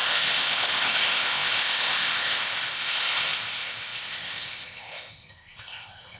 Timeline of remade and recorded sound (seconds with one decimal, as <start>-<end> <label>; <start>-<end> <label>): 0.0-6.2 remade